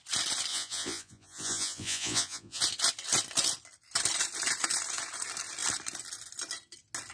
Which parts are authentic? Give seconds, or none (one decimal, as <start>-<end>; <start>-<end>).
0.0-0.5; 2.6-7.1